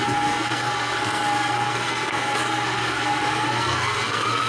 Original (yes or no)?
no